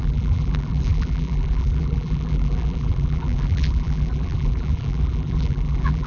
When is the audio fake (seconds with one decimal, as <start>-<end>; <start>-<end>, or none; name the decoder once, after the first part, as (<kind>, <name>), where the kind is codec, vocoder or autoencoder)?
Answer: 0.0-6.1 (vocoder, BigVGAN v2)